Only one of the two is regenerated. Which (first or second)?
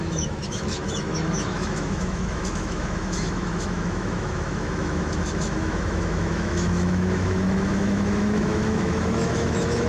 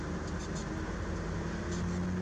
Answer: first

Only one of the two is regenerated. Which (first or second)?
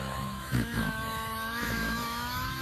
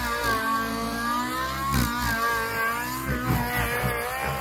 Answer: first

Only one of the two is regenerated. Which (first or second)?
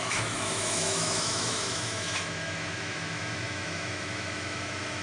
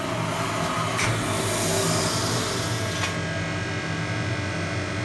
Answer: first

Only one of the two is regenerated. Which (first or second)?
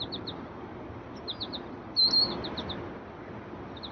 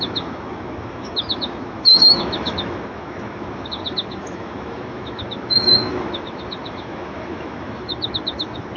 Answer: second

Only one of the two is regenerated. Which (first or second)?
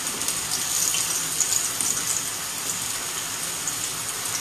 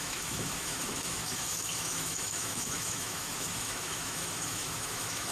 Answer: second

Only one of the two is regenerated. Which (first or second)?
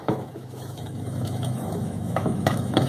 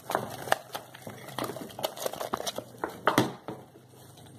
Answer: first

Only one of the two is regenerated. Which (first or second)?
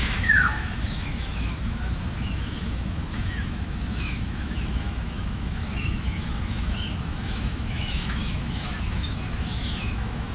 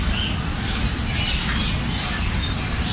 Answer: first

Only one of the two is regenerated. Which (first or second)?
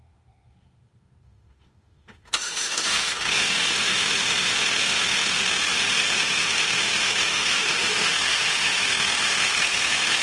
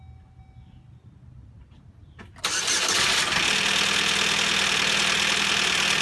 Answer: first